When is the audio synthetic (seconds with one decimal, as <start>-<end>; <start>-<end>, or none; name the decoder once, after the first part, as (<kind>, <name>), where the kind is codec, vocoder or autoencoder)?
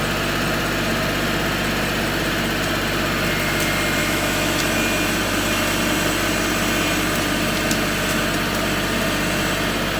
4.0-4.6 (autoencoder, DAC-VAE)